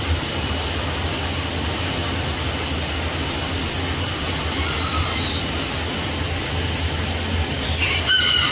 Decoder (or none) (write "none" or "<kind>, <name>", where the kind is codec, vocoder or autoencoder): none